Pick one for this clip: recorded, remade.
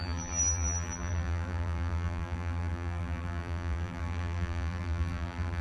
remade